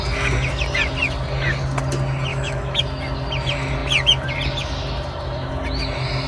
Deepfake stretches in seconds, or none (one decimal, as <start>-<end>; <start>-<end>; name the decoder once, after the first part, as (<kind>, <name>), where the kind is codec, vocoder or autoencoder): 2.3-2.8 (autoencoder, DAC-VAE)